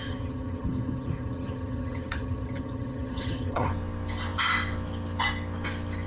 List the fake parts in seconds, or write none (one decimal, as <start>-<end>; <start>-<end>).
0.0-3.7